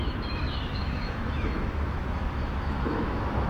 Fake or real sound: fake